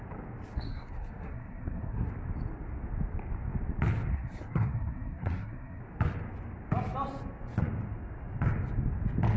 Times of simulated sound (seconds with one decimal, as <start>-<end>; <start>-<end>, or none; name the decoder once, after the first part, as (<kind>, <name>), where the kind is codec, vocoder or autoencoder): 0.7-2.1 (codec, SNAC); 4.1-5.8